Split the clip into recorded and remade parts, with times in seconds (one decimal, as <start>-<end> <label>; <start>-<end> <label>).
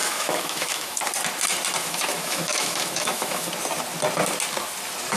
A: 0.0-1.0 remade; 1.0-1.8 recorded; 1.8-3.5 remade; 3.5-5.2 recorded